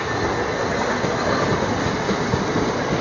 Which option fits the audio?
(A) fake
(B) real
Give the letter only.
B